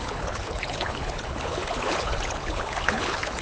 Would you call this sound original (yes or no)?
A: no